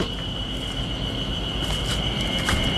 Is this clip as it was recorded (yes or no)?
yes